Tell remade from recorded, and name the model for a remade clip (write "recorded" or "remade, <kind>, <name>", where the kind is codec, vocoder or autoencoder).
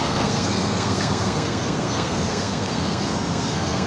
remade, codec, SNAC